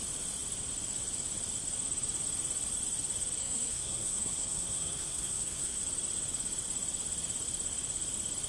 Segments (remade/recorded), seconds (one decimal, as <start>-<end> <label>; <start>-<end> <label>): 0.0-3.4 recorded; 3.4-5.8 remade; 5.8-8.5 recorded